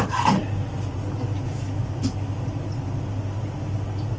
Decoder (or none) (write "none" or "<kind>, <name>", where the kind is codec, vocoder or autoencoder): none